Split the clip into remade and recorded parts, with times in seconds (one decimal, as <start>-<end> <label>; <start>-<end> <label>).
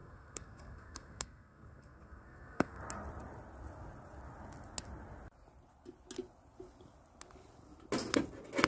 0.0-2.8 remade; 2.8-8.7 recorded